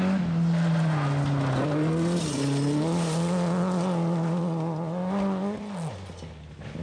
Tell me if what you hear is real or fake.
real